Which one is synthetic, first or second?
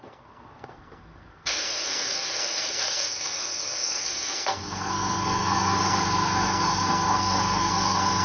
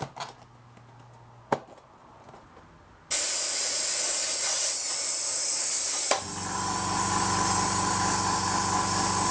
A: first